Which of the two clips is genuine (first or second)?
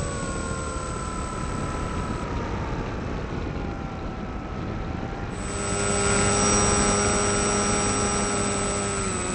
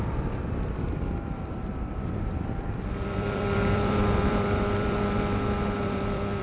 first